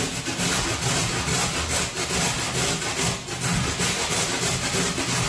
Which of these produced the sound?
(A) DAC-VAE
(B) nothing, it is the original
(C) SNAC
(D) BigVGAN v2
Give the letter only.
B